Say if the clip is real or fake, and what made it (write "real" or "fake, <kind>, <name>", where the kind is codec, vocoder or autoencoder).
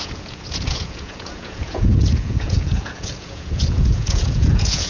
fake, vocoder, Vocos